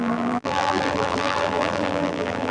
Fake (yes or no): yes